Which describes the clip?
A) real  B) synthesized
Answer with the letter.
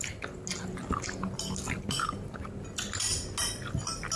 A